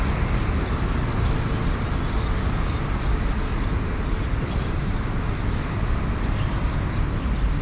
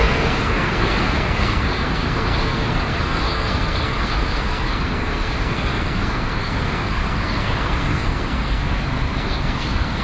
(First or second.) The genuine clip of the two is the first